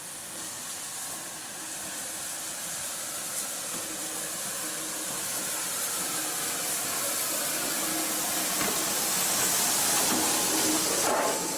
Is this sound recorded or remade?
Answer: recorded